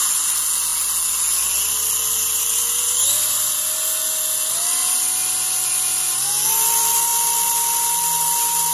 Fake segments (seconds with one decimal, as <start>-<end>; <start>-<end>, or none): none